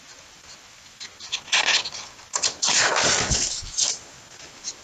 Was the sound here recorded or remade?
recorded